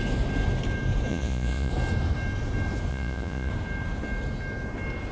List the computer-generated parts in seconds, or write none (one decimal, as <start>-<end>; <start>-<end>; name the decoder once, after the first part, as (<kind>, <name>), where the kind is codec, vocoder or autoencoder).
1.1-1.7 (vocoder, Vocos); 2.9-3.5